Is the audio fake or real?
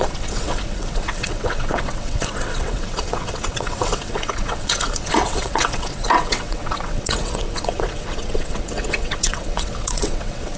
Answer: fake